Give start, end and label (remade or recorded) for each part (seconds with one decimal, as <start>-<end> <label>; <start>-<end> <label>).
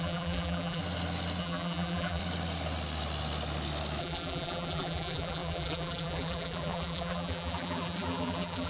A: 0.0-0.8 remade; 0.8-1.4 recorded; 1.4-2.2 remade; 2.2-4.0 recorded; 4.0-8.7 remade